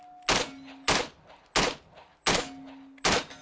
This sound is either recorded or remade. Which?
recorded